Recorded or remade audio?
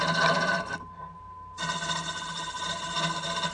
recorded